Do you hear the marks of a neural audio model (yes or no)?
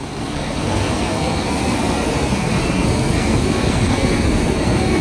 yes